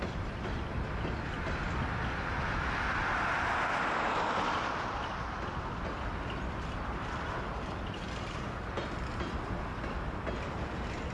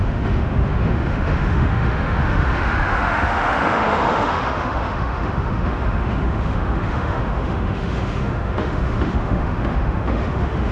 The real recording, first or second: first